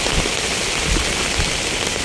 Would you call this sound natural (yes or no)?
yes